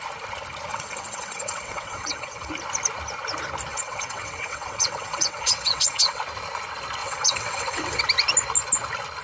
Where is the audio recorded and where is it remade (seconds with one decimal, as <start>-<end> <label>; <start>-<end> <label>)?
0.0-0.7 recorded; 0.7-2.5 remade; 2.5-3.7 recorded; 3.7-6.2 remade; 6.2-7.0 recorded; 7.0-8.0 remade; 8.0-9.2 recorded

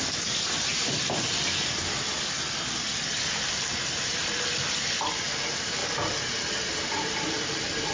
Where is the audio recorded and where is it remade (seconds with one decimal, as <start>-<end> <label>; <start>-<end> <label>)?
0.0-7.9 recorded

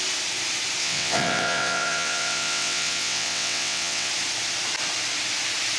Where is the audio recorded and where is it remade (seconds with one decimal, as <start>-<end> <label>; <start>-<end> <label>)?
0.0-0.8 recorded; 0.8-4.1 remade; 4.1-5.8 recorded